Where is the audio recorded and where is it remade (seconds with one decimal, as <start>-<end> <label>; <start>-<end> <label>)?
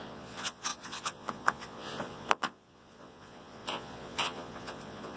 0.0-5.2 remade